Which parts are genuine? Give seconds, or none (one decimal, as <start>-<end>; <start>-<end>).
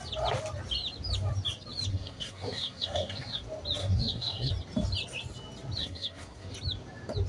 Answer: 0.0-1.9; 3.4-3.8; 4.5-5.8; 6.5-7.3